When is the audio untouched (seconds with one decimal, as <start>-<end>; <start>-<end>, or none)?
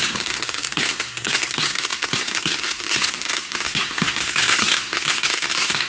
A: none